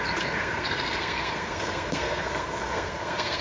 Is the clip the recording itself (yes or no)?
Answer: no